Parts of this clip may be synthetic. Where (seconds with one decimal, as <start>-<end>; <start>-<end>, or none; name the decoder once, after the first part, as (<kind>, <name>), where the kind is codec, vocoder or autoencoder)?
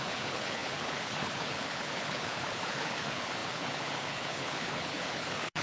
0.0-5.6 (codec, HILCodec)